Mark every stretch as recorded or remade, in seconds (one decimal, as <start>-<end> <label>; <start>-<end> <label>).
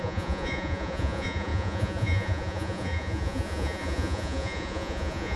0.0-5.4 remade